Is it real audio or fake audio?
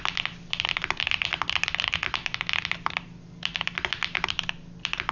real